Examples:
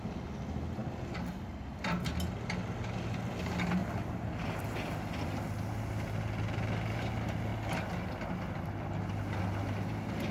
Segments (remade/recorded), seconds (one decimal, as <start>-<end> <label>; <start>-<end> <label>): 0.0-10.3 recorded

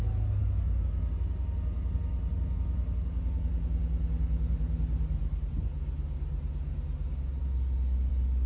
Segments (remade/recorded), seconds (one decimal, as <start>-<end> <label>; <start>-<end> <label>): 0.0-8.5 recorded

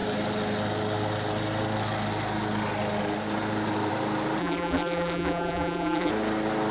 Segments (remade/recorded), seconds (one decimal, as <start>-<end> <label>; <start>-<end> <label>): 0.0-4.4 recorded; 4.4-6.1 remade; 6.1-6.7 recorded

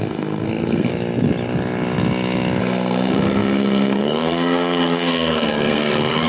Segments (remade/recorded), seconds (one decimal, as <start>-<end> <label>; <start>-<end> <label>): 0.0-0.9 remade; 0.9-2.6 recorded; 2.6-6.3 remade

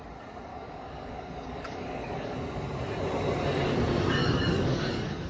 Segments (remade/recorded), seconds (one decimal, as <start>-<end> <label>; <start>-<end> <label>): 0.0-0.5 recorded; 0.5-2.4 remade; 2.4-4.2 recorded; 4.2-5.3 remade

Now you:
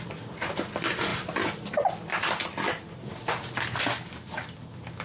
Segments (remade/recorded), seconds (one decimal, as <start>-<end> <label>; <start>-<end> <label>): 0.0-5.0 recorded